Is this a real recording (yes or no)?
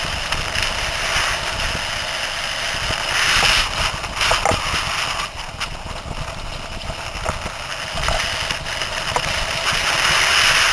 yes